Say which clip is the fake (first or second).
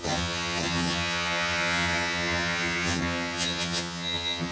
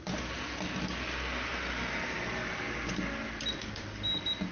first